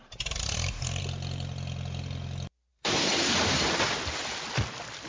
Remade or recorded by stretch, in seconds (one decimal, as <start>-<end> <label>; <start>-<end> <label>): 0.0-1.0 remade; 1.0-2.7 recorded; 2.7-3.3 remade; 3.3-5.1 recorded